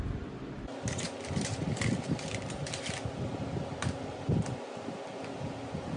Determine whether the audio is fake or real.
real